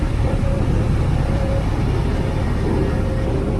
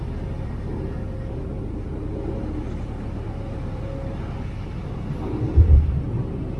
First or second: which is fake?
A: first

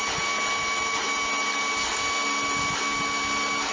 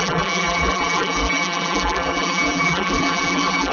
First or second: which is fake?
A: second